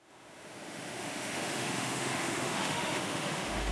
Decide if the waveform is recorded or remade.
remade